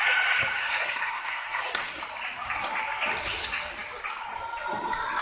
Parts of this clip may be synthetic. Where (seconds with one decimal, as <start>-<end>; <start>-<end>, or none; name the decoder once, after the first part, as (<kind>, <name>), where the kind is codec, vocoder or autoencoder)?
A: 0.6-2.0 (codec, SNAC)